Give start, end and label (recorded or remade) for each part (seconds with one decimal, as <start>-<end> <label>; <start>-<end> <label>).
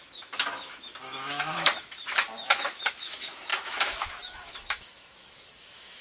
0.0-6.0 remade